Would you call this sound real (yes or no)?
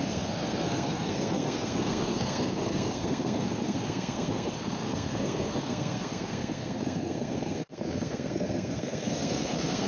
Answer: no